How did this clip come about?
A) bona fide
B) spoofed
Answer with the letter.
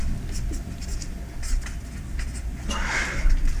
A